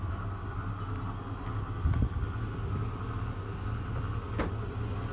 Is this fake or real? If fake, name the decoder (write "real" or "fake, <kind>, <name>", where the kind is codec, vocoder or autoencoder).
real